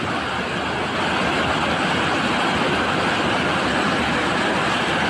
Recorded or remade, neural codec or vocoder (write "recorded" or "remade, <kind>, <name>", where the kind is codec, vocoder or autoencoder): recorded